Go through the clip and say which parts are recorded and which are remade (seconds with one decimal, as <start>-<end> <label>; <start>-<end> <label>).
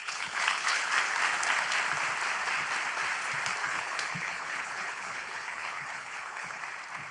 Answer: 0.0-0.9 remade; 0.9-3.6 recorded; 3.6-6.6 remade; 6.6-7.1 recorded